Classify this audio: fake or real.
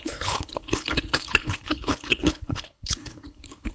fake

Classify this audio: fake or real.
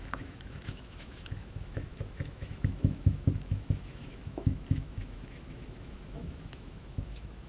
fake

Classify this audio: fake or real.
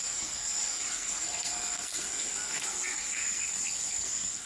fake